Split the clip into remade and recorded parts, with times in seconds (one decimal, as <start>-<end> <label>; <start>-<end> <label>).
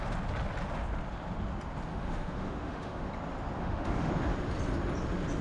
0.0-1.9 recorded; 1.9-3.1 remade; 3.1-3.6 recorded; 3.6-4.1 remade; 4.1-5.4 recorded